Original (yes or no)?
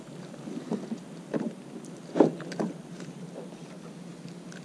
yes